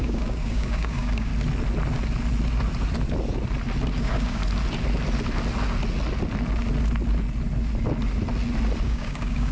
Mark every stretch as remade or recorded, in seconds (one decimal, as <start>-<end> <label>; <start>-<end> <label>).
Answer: 0.0-1.3 remade; 1.3-4.0 recorded; 4.0-4.4 remade; 4.4-8.8 recorded; 8.8-9.5 remade